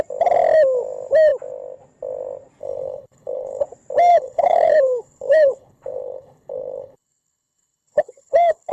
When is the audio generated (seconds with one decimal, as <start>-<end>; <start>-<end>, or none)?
2.6-3.6; 4.1-8.7